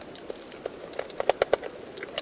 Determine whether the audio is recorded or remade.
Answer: recorded